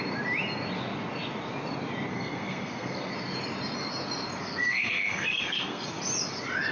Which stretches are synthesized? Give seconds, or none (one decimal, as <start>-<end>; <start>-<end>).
2.1-3.1; 4.4-6.0